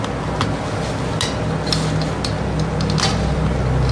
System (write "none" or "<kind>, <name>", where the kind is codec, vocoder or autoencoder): none